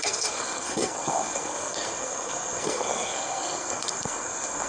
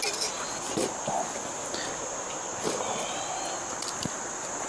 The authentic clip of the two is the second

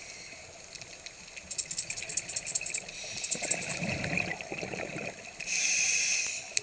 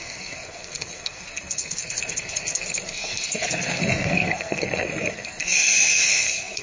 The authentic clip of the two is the first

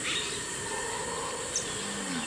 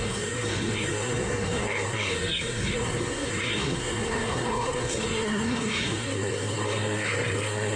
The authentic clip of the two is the first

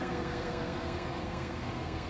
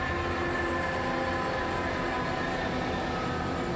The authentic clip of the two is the second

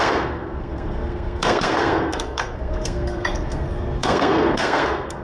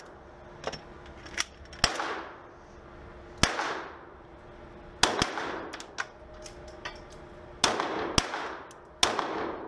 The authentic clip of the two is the second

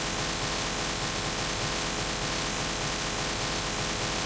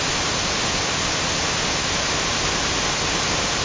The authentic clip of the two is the second